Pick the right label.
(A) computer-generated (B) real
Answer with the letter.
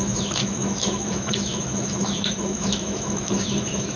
A